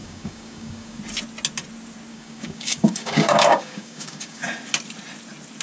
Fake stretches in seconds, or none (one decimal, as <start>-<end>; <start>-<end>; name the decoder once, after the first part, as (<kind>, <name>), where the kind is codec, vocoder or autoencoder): 0.0-1.0 (codec, DAC); 2.1-4.5